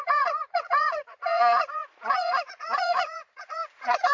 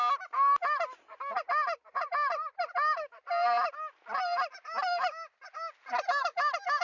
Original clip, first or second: second